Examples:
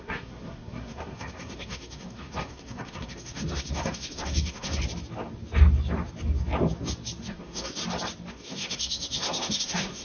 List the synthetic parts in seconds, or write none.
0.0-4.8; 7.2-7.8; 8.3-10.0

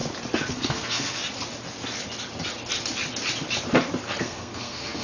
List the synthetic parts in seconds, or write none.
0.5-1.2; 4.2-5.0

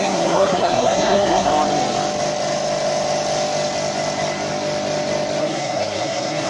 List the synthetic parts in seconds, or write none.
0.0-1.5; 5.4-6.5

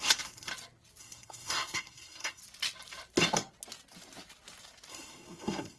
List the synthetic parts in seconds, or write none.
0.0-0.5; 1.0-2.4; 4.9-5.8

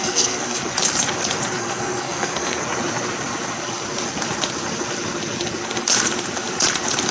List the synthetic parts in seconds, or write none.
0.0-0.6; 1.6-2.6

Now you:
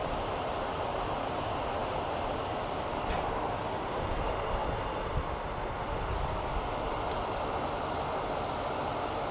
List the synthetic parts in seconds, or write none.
none

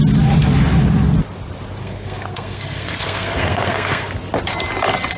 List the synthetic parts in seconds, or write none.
1.8-4.1

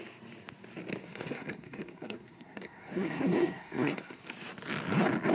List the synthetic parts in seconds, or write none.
1.0-4.2